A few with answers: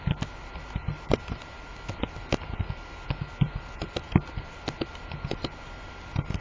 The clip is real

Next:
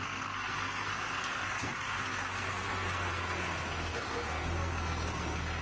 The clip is fake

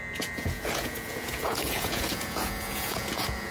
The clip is fake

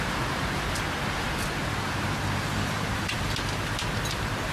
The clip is fake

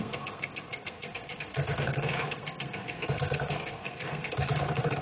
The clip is fake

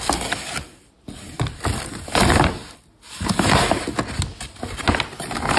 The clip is real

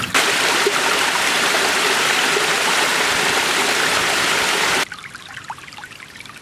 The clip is fake